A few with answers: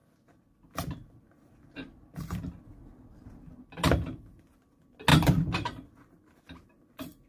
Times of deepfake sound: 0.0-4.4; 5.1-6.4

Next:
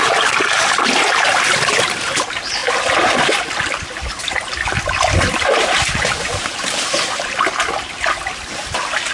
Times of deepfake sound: none

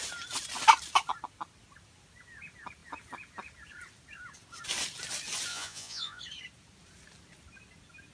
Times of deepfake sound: 5.5-6.2

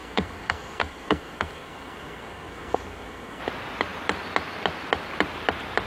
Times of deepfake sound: 0.0-3.4

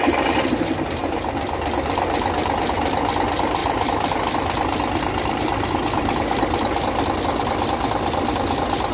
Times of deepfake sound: 3.6-7.2

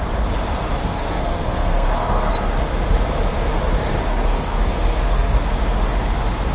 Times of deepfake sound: 0.8-2.3; 4.1-5.4

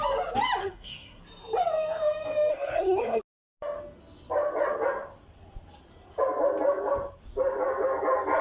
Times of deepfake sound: 0.6-1.2; 2.5-3.2